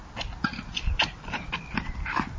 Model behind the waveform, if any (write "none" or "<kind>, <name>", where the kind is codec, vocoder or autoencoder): none